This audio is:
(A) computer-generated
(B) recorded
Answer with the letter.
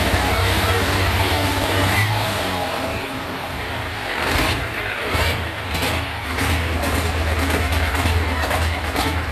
A